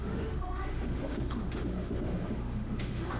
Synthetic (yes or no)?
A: yes